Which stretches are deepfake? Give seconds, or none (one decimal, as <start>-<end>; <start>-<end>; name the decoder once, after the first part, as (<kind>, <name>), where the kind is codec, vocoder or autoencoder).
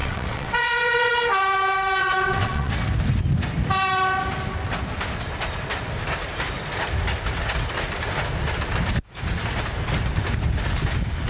0.0-1.1 (vocoder, WaveNeXt); 2.0-2.7